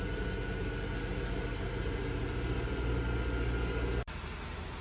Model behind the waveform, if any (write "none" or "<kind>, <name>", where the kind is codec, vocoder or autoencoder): none